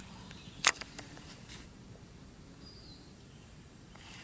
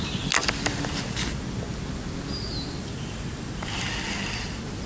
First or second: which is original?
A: second